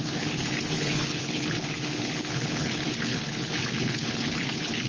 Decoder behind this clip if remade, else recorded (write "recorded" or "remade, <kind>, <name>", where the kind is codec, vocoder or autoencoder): remade, codec, HILCodec